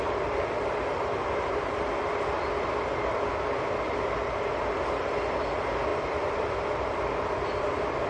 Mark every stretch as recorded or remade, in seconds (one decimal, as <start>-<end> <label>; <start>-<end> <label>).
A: 0.0-5.9 recorded; 5.9-7.1 remade; 7.1-8.1 recorded